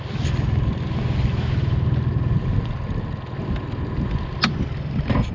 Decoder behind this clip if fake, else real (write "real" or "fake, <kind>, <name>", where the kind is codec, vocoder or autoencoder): real